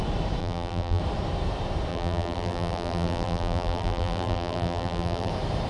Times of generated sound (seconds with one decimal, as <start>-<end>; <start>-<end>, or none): 0.4-1.0; 1.9-5.3